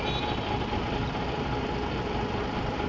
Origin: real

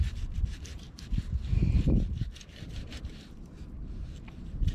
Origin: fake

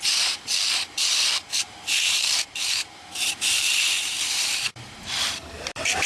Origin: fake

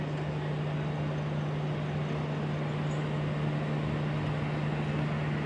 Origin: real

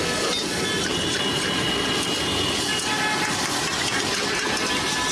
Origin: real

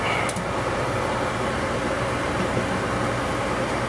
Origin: fake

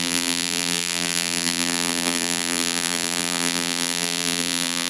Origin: fake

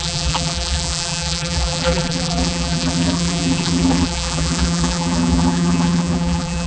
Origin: fake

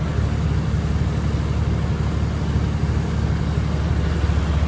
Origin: real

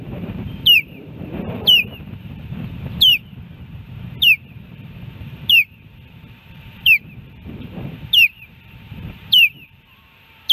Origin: fake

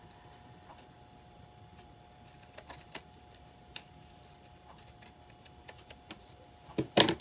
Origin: fake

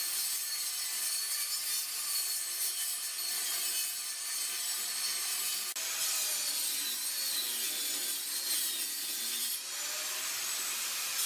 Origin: real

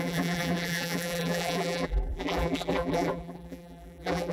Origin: fake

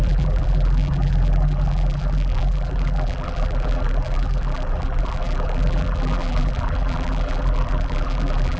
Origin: fake